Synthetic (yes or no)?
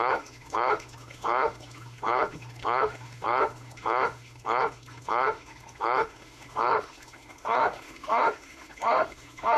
yes